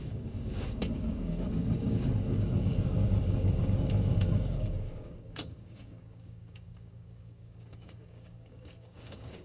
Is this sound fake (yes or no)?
yes